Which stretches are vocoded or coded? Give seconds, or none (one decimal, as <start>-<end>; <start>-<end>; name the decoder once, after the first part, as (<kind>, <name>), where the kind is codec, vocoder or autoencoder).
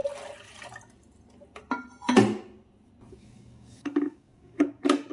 3.1-5.1 (codec, DAC)